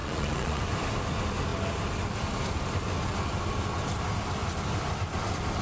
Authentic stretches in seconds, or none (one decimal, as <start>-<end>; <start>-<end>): 0.6-5.6